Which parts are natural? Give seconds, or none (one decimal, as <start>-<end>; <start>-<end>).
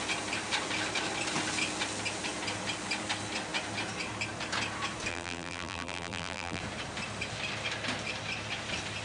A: 0.0-5.1; 6.6-9.0